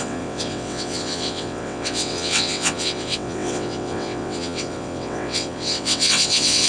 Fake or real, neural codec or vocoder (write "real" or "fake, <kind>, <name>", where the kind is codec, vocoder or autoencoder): fake, vocoder, WaveNeXt